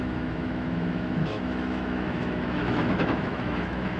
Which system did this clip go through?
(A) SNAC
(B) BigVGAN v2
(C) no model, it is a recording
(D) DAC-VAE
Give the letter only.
D